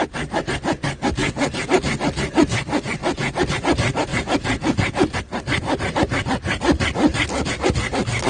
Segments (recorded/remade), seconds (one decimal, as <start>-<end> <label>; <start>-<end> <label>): 0.0-1.2 recorded; 1.2-1.7 remade; 1.7-3.0 recorded; 3.0-3.5 remade; 3.5-4.1 recorded; 4.1-5.2 remade; 5.2-8.3 recorded